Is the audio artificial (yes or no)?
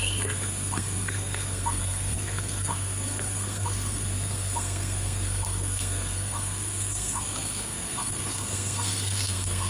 yes